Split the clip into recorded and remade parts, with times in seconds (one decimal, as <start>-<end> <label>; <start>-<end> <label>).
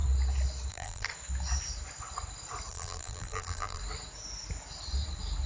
0.0-0.7 recorded; 0.7-1.1 remade; 1.1-2.7 recorded; 2.7-3.8 remade; 3.8-5.5 recorded